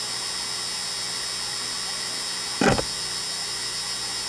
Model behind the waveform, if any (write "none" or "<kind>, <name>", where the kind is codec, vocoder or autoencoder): none